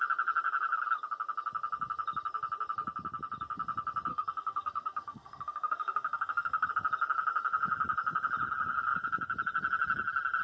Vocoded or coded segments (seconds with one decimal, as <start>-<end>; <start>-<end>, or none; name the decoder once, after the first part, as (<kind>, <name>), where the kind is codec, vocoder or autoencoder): 4.1-6.7 (codec, SNAC)